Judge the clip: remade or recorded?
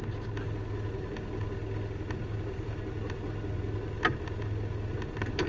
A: recorded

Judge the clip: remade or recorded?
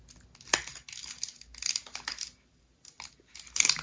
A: recorded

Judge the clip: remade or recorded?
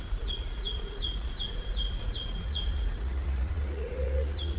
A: remade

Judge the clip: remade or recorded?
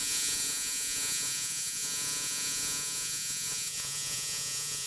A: remade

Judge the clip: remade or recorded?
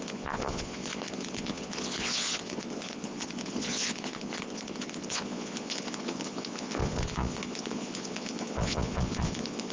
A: remade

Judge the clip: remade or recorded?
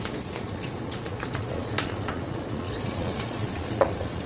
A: remade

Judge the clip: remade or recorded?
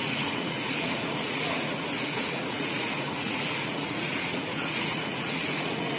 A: remade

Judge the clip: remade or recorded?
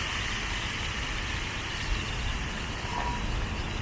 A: recorded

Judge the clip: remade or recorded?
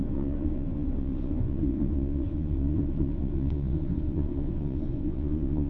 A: remade